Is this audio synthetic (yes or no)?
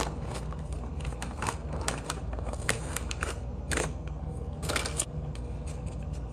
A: yes